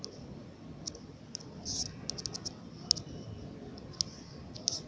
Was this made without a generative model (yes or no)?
yes